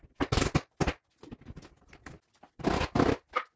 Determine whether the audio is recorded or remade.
recorded